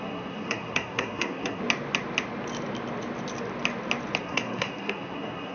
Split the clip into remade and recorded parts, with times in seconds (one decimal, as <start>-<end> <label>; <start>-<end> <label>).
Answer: 0.0-1.6 remade; 1.6-4.2 recorded; 4.2-5.5 remade